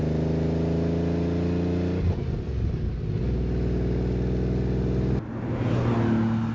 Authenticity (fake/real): real